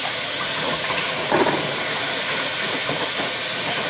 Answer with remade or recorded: remade